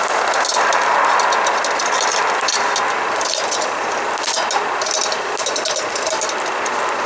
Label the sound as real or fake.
real